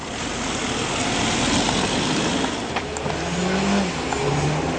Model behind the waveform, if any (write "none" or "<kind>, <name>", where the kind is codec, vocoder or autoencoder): none